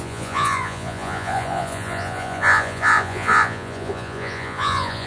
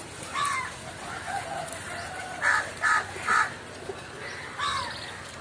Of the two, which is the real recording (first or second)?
second